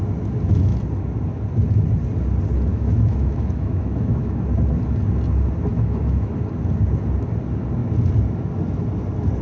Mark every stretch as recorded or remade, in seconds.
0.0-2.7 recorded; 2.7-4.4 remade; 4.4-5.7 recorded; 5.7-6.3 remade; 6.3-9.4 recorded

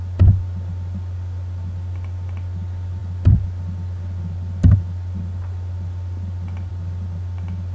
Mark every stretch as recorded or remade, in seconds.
0.0-7.7 recorded

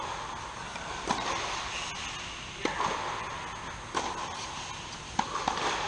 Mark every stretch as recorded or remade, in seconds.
0.0-5.9 recorded

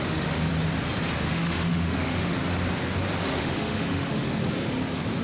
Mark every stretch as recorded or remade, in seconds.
0.0-0.5 remade; 0.5-1.3 recorded; 1.3-2.4 remade; 2.4-3.2 recorded; 3.2-4.4 remade; 4.4-5.2 recorded